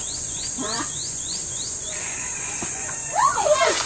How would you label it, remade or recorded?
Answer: remade